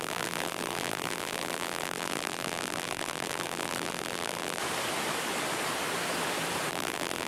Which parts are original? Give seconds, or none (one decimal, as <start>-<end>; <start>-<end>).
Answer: 4.6-6.7